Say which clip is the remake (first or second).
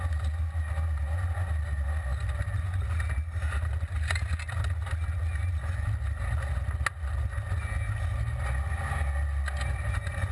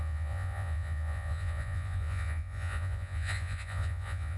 second